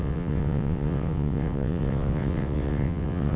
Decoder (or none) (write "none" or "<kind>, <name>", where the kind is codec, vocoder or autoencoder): vocoder, WaveNeXt